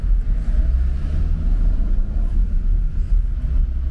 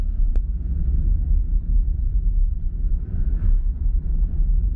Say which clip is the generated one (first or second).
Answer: second